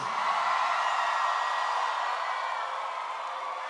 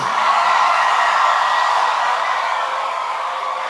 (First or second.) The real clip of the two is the first